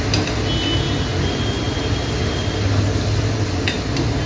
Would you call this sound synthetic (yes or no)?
no